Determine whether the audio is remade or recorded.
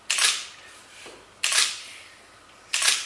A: recorded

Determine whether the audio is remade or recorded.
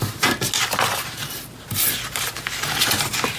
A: recorded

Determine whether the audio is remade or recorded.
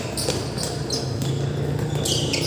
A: recorded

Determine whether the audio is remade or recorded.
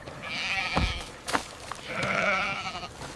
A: recorded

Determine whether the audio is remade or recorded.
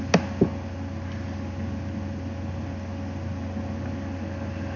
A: recorded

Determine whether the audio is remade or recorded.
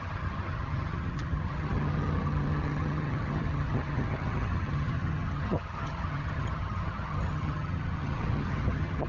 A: remade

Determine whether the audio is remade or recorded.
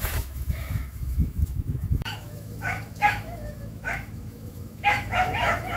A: remade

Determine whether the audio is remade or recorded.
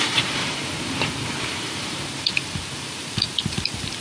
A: remade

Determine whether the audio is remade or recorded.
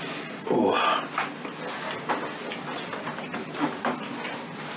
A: recorded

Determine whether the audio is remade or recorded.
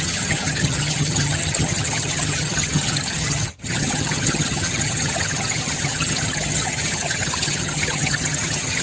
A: remade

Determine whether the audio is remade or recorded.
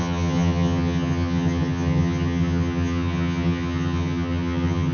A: remade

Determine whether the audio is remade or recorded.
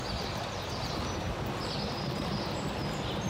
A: recorded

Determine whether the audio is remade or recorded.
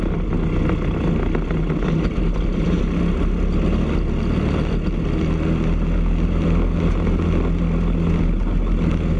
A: recorded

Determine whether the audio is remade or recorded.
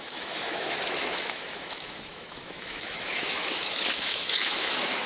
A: remade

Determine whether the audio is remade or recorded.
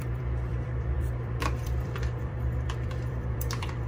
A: remade